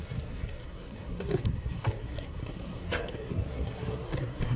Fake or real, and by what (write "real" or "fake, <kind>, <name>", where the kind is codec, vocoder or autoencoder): fake, codec, SNAC